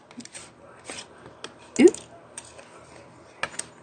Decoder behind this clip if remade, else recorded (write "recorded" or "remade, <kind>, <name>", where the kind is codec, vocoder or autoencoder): recorded